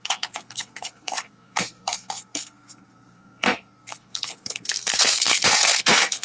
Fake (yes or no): yes